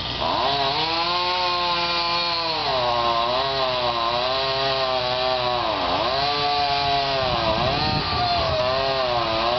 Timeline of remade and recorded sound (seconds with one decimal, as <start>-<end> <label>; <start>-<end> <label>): 0.0-8.0 recorded; 8.0-8.6 remade; 8.6-9.6 recorded